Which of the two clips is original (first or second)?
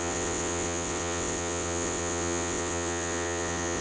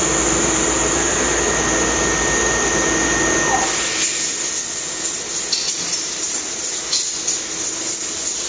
second